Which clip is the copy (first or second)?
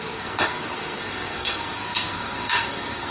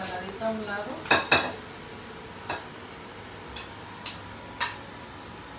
first